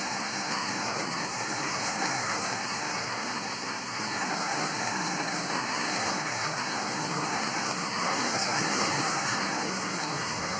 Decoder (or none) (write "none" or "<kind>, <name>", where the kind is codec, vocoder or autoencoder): codec, SNAC